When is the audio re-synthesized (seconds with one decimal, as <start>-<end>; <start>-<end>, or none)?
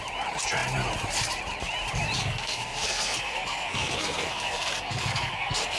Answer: 2.2-5.8